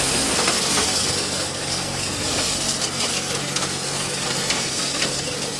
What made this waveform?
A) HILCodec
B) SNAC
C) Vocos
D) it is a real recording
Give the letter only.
B